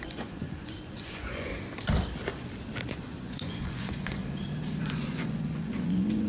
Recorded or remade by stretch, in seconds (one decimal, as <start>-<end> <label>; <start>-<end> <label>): 0.0-1.5 remade; 1.5-2.9 recorded; 2.9-4.2 remade; 4.2-4.8 recorded; 4.8-6.3 remade

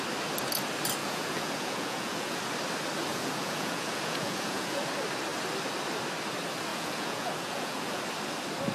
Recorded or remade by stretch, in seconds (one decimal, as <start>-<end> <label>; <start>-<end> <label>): 0.0-1.0 recorded; 1.0-2.4 remade; 2.4-3.1 recorded; 3.1-4.8 remade; 4.8-6.7 recorded; 6.7-8.0 remade; 8.0-8.7 recorded

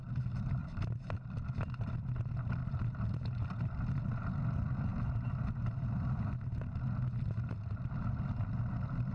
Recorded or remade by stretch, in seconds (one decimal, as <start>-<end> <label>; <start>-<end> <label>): 0.0-9.1 recorded

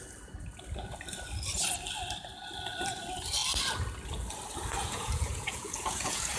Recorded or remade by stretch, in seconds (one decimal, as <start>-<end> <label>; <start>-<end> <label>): 0.0-4.8 recorded; 4.8-6.4 remade

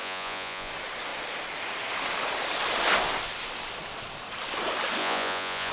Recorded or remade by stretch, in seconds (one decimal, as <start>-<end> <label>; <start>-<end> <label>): 0.0-0.7 remade; 0.7-5.0 recorded; 5.0-5.7 remade

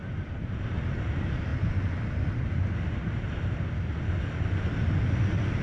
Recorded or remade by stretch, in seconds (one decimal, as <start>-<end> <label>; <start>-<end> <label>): 0.0-5.6 recorded

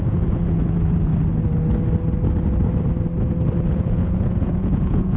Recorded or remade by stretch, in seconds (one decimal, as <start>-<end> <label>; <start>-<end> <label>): 0.0-1.1 remade; 1.1-3.7 recorded; 3.7-5.2 remade